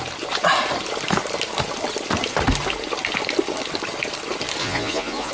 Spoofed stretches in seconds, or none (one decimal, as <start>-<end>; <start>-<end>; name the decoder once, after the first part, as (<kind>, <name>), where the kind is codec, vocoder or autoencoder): 4.6-5.3 (vocoder, Vocos)